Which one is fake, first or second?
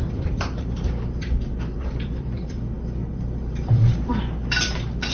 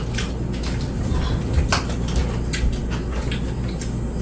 first